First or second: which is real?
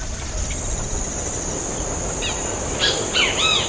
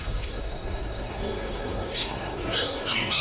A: first